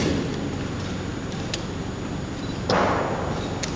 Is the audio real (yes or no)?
yes